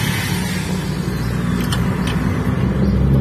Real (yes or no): yes